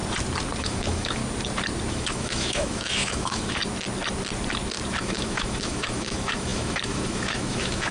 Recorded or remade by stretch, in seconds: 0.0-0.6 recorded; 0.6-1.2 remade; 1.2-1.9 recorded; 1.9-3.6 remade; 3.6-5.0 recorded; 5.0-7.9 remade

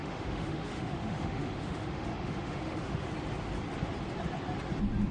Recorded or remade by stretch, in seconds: 0.0-3.1 remade; 3.1-5.1 recorded

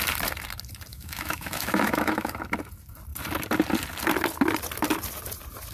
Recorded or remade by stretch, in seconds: 0.0-0.9 recorded; 0.9-2.4 remade; 2.4-5.7 recorded

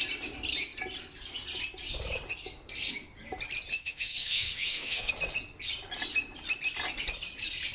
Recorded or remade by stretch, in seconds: 0.0-3.7 recorded; 3.7-5.1 remade; 5.1-7.7 recorded

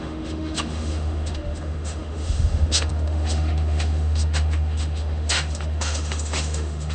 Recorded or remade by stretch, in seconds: 0.0-6.9 remade

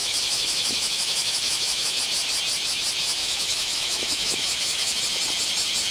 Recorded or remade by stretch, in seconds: 0.0-2.0 remade; 2.0-3.2 recorded; 3.2-5.0 remade; 5.0-5.9 recorded

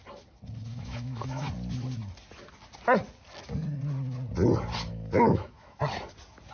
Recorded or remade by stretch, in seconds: 0.0-0.7 recorded; 0.7-1.5 remade; 1.5-4.9 recorded; 4.9-5.8 remade; 5.8-6.5 recorded

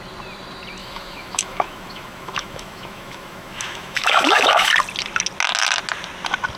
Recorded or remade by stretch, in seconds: 0.0-0.8 recorded; 0.8-4.7 remade; 4.7-6.6 recorded